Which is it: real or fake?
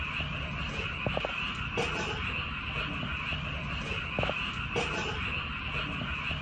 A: real